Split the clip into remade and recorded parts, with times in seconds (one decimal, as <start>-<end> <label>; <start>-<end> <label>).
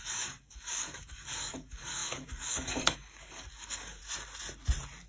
0.0-4.0 remade; 4.0-5.1 recorded